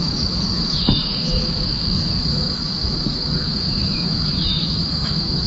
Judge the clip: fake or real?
fake